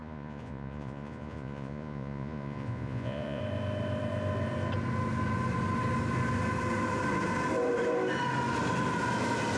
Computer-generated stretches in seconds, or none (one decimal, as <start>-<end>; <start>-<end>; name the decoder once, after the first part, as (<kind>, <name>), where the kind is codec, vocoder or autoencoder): 0.0-3.4 (vocoder, Vocos)